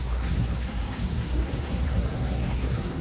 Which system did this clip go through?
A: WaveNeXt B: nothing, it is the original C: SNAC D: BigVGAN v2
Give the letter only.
C